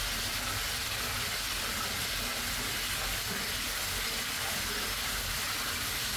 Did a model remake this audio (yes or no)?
no